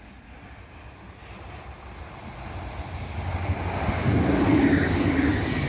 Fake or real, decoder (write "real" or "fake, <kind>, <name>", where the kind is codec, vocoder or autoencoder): real